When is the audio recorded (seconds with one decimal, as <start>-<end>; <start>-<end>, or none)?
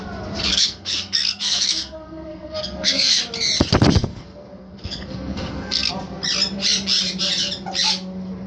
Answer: 0.0-0.5; 3.2-4.1; 5.9-8.5